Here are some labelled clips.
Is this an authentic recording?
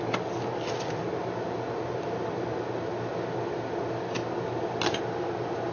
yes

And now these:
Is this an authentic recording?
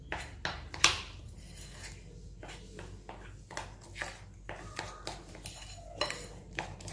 yes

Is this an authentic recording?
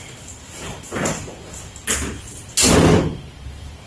yes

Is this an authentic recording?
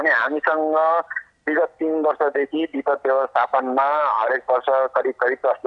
yes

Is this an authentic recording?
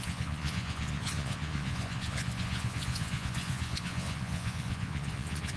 no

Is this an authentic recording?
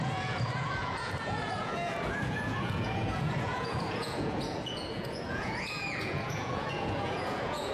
no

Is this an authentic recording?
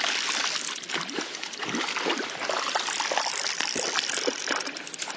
yes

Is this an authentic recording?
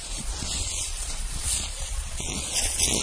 no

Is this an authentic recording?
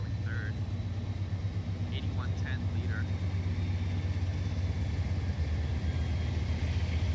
yes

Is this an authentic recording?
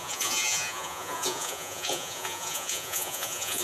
no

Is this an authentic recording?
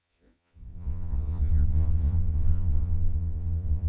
no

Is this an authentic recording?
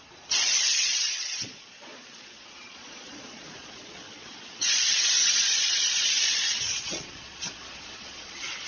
no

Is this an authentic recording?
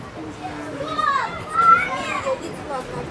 yes